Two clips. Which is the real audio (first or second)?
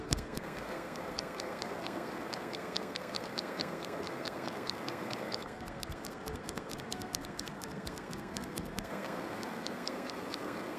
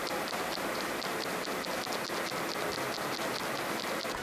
second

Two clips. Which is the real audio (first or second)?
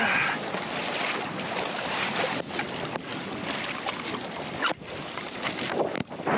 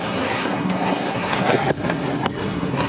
first